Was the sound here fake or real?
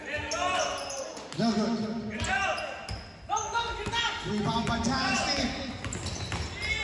real